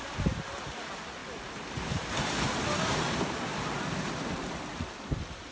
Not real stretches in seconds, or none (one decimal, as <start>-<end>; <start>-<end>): none